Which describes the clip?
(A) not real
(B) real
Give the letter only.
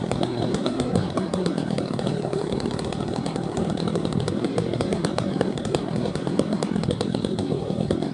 A